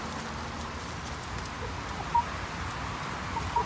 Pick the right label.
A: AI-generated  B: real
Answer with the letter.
B